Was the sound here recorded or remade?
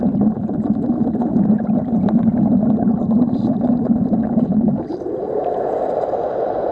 remade